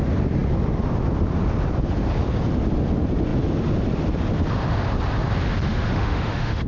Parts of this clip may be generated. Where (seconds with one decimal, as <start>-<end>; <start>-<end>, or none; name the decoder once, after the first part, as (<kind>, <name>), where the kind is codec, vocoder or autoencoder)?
5.7-6.7 (autoencoder, DAC-VAE)

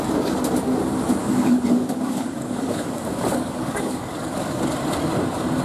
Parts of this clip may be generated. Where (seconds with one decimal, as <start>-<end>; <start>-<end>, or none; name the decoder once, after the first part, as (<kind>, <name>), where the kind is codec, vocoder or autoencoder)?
1.2-4.6 (codec, DAC)